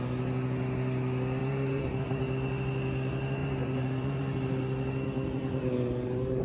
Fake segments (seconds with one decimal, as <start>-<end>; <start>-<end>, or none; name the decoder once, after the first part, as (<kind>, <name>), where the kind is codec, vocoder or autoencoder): 1.4-2.0 (vocoder, BigVGAN v2); 3.4-4.6